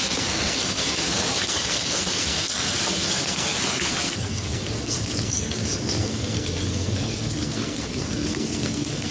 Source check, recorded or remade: remade